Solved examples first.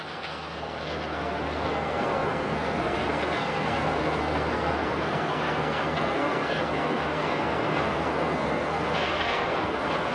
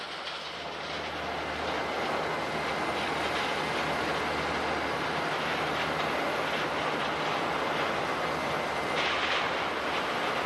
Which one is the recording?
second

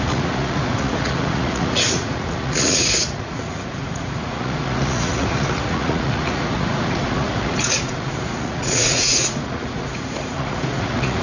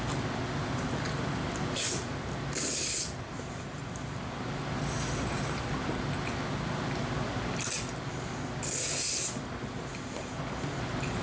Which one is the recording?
second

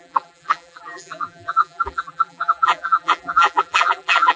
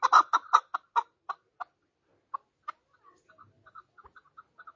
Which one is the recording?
second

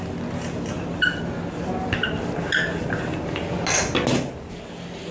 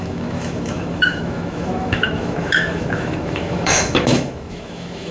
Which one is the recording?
first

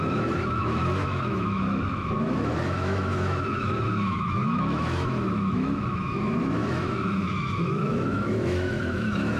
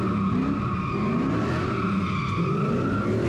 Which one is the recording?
second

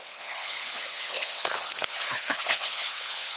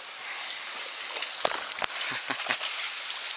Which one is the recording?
second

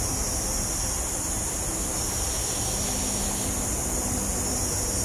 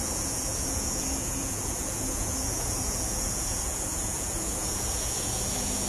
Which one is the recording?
first